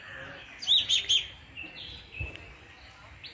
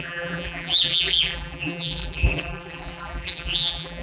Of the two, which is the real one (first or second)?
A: first